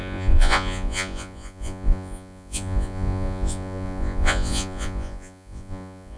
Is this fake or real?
fake